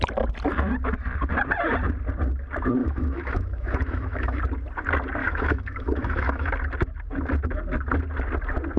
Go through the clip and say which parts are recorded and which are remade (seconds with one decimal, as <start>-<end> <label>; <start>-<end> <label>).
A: 0.0-2.8 recorded; 2.8-4.4 remade; 4.4-5.2 recorded; 5.2-6.5 remade; 6.5-8.8 recorded